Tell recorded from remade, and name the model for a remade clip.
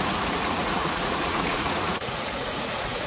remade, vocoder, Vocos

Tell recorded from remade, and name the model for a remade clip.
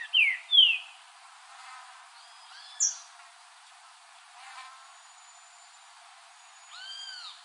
recorded